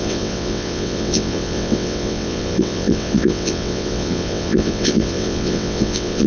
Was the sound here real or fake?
fake